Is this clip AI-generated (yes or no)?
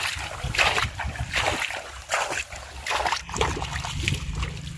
no